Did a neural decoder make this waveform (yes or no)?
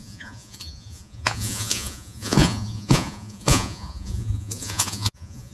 yes